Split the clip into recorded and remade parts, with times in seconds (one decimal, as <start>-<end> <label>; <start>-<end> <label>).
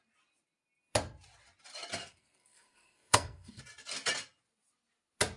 0.0-2.0 recorded; 2.0-3.6 remade; 3.6-5.4 recorded